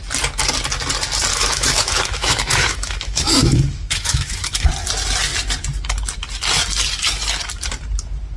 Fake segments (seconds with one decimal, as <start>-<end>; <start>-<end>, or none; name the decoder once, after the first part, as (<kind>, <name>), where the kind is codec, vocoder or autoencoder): 1.3-4.7 (autoencoder, DAC-VAE)